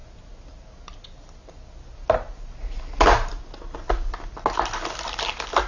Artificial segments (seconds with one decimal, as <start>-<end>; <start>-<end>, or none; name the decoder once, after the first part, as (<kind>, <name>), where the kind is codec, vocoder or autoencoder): none